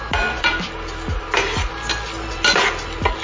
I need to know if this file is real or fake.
real